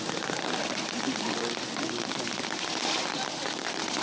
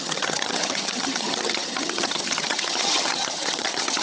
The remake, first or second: second